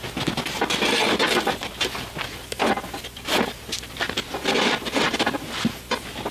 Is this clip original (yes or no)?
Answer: yes